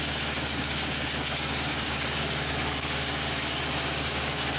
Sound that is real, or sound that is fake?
fake